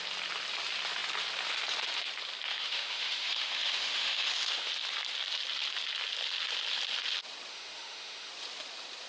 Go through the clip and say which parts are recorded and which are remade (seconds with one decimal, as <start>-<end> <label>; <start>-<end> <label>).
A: 0.0-2.5 recorded; 2.5-4.7 remade; 4.7-7.5 recorded; 7.5-8.3 remade; 8.3-9.1 recorded